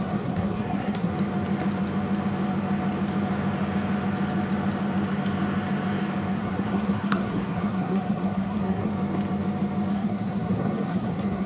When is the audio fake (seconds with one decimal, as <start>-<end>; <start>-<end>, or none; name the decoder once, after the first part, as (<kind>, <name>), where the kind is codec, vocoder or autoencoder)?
0.0-1.1 (codec, SNAC); 6.3-8.9; 9.9-11.5